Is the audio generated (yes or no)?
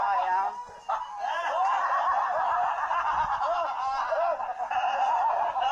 no